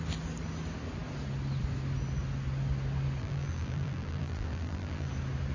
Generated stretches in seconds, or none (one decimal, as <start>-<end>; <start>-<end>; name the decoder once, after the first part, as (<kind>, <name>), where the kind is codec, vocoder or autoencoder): 3.2-5.1 (vocoder, BigVGAN v2)